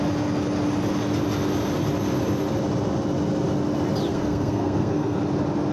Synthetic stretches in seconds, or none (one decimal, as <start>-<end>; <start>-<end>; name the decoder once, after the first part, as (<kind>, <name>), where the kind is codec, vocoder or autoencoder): 4.1-5.2 (codec, SNAC)